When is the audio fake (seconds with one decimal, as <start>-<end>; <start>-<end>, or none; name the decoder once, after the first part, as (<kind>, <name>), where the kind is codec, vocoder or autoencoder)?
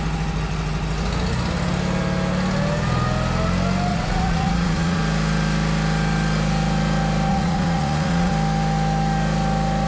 3.9-5.0 (vocoder, Vocos); 7.3-8.3